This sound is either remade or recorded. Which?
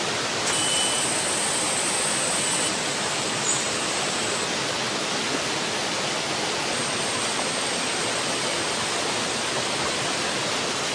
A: recorded